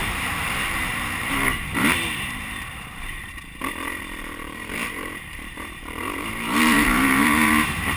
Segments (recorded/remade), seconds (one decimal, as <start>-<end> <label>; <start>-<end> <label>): 0.0-8.0 remade